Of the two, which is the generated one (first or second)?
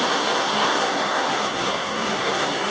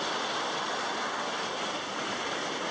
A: first